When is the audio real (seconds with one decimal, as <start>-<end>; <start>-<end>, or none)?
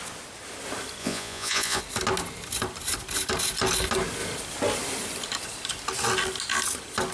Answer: 0.0-1.0; 1.8-7.1